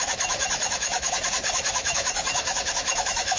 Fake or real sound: fake